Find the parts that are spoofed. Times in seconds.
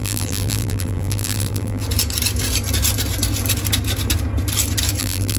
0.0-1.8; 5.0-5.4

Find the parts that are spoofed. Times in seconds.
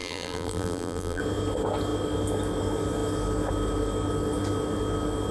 0.0-1.2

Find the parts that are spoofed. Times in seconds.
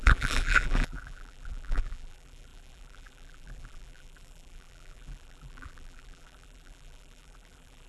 0.0-7.9